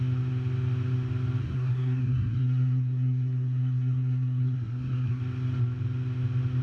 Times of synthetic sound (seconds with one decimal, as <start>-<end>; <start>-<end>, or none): 1.4-5.2